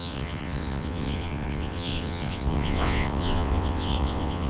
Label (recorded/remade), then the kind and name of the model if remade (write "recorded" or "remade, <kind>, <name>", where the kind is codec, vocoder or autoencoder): remade, vocoder, WaveNeXt